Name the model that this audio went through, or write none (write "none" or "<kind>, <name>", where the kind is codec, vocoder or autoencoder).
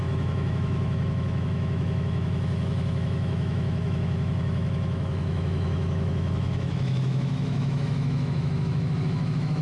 autoencoder, DAC-VAE